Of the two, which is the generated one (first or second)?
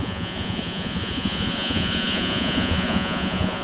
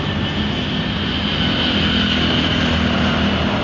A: first